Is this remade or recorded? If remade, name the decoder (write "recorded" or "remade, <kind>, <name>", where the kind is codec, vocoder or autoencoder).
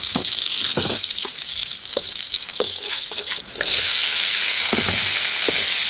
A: remade, codec, SNAC